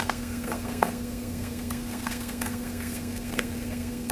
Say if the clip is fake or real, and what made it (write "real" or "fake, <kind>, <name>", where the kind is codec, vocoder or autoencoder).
fake, codec, SNAC